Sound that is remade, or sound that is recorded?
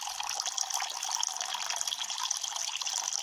recorded